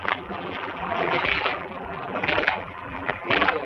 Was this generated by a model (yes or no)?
yes